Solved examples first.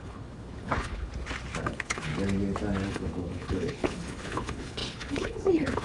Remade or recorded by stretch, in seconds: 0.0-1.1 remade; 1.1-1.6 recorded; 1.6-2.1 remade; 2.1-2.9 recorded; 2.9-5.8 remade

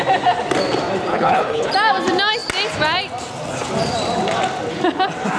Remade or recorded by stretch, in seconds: 0.0-1.1 recorded; 1.1-1.7 remade; 1.7-5.4 recorded

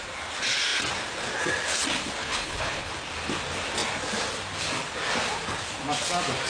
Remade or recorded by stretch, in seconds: 0.0-2.2 recorded; 2.2-2.9 remade; 2.9-6.5 recorded

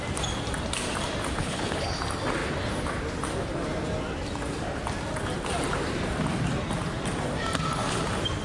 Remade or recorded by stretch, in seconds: 0.0-1.4 recorded; 1.4-2.0 remade; 2.0-8.4 recorded

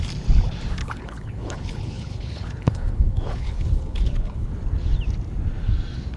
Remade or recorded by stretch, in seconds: 0.0-0.8 recorded; 0.8-4.5 remade; 4.5-6.2 recorded

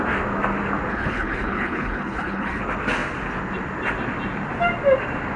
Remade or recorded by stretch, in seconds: 0.0-0.9 recorded; 0.9-2.6 remade; 2.6-5.4 recorded